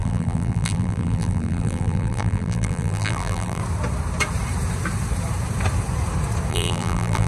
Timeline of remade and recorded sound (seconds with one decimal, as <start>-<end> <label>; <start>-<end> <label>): 0.0-3.6 remade; 3.6-6.5 recorded; 6.5-7.3 remade